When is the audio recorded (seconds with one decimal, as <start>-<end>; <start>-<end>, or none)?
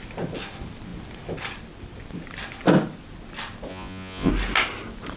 0.0-3.7; 4.3-5.2